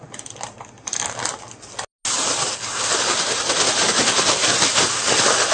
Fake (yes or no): no